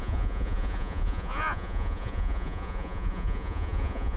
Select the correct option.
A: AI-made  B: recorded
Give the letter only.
A